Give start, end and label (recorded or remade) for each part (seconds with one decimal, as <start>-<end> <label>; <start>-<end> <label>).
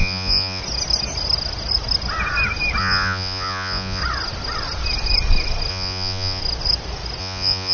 0.0-0.6 remade; 0.6-2.8 recorded; 2.8-4.0 remade; 4.0-5.7 recorded; 5.7-6.4 remade; 6.4-7.2 recorded; 7.2-7.7 remade